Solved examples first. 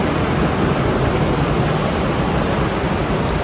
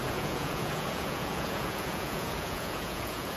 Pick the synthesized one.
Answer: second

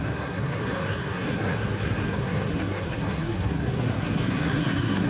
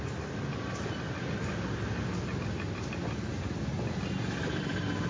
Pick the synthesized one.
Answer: first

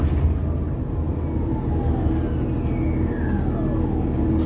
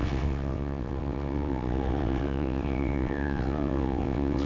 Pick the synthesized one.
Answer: second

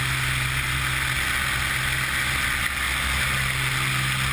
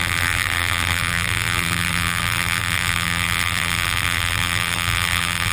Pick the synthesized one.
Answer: second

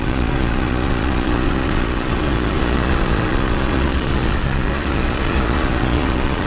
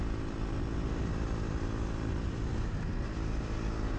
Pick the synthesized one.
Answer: first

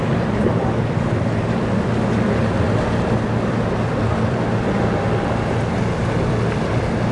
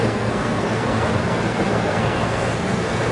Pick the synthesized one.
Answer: second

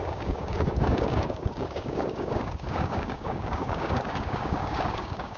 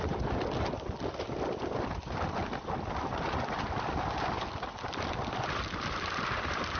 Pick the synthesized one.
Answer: first